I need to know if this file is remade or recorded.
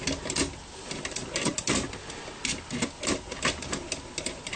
recorded